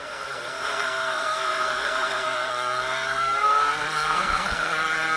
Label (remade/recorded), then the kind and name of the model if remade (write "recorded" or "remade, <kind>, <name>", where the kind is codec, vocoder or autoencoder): remade, codec, SNAC